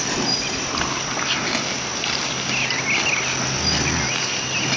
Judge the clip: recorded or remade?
recorded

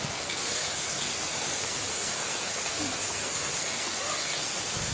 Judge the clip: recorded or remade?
remade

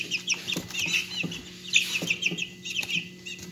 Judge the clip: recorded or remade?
recorded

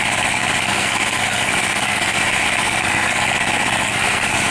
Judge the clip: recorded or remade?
remade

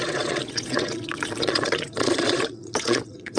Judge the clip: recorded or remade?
remade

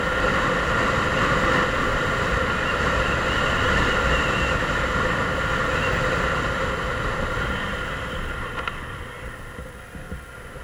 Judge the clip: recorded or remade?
recorded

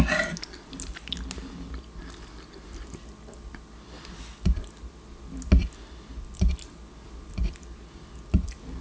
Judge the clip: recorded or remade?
recorded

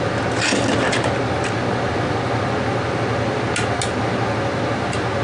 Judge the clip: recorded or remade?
recorded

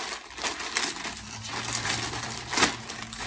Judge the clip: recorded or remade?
remade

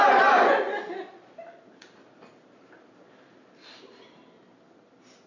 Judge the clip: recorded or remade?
recorded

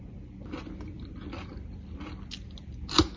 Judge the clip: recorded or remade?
recorded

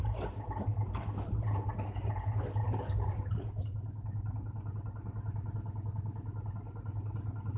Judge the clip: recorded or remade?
recorded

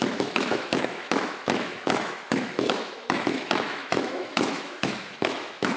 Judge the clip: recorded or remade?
remade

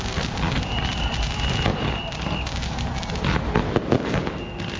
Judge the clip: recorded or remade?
recorded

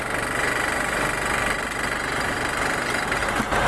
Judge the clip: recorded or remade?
recorded